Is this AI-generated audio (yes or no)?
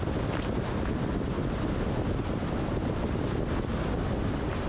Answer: no